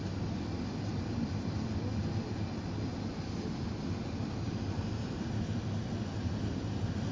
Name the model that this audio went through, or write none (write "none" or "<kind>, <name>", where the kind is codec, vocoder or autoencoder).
none